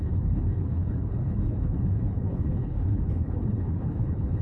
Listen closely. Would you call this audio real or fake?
fake